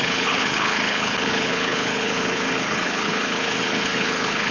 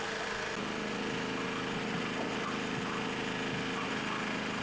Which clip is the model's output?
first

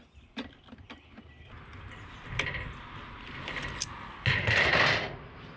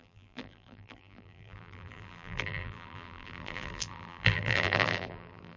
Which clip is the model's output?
second